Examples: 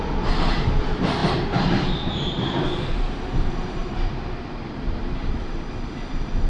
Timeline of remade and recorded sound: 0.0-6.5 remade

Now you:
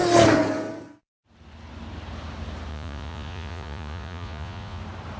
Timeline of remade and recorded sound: 0.0-2.7 recorded; 2.7-4.8 remade; 4.8-5.2 recorded

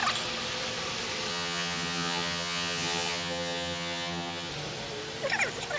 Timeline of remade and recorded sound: 0.0-1.3 recorded; 1.3-4.5 remade; 4.5-5.8 recorded

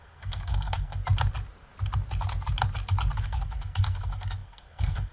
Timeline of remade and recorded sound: 0.0-1.0 remade; 1.0-3.2 recorded; 3.2-5.1 remade

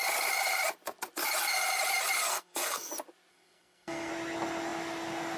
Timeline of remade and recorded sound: 0.0-2.3 recorded; 2.3-2.9 remade; 2.9-3.3 recorded; 3.3-4.1 remade; 4.1-5.4 recorded

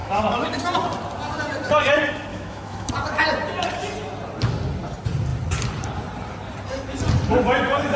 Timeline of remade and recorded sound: 0.0-0.6 remade; 0.6-2.3 recorded; 2.3-2.9 remade; 2.9-8.0 recorded

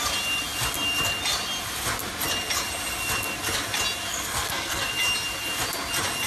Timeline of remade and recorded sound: 0.0-4.1 recorded; 4.1-4.9 remade; 4.9-6.3 recorded